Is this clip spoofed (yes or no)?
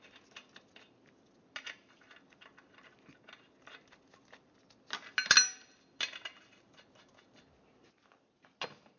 no